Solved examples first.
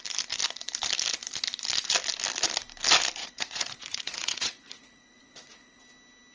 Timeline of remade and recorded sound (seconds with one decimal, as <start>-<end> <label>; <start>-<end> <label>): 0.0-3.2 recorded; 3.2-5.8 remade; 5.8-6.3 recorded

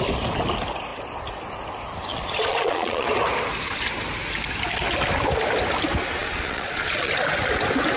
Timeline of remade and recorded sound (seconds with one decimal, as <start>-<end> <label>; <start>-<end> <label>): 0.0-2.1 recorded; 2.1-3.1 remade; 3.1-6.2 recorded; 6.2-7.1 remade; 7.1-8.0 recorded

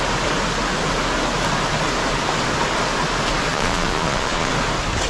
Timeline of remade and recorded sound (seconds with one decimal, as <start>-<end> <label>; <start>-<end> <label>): 0.0-3.5 recorded; 3.5-4.5 remade; 4.5-5.1 recorded